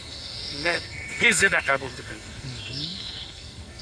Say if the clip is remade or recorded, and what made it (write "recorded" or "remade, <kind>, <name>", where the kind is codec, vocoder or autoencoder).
remade, codec, SNAC